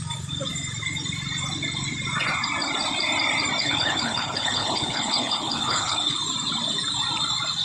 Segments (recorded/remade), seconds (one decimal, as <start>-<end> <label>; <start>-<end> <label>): 0.0-3.6 recorded; 3.6-6.2 remade; 6.2-7.6 recorded